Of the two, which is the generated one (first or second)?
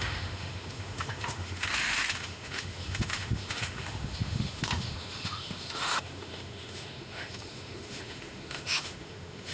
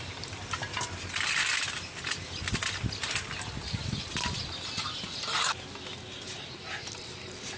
first